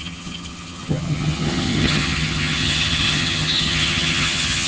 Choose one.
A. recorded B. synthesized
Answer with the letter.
B